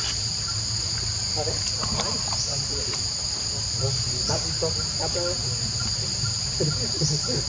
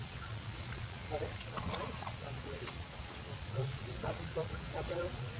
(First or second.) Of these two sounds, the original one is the first